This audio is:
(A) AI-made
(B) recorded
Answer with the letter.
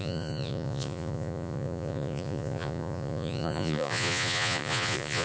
A